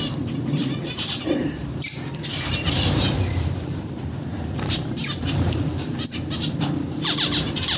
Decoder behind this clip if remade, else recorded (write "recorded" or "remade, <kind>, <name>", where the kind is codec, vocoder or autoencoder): remade, vocoder, BigVGAN v2